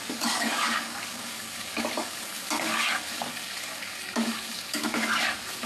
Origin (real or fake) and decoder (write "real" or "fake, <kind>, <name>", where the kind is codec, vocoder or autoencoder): fake, codec, DAC